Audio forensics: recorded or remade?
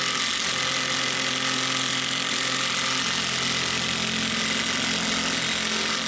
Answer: recorded